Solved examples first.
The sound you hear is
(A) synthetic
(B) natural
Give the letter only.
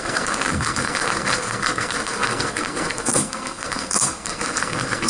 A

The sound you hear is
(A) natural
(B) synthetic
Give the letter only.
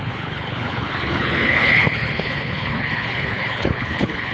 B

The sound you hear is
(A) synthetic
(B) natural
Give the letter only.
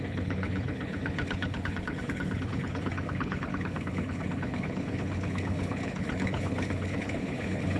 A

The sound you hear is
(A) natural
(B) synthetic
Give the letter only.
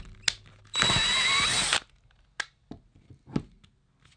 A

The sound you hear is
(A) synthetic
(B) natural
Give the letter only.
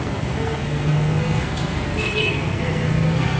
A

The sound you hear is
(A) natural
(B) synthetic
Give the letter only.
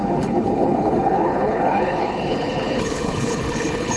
B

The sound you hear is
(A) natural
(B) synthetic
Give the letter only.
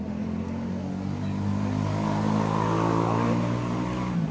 A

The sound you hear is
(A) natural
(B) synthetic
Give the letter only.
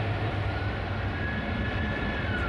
A